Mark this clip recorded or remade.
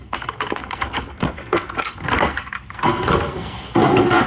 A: remade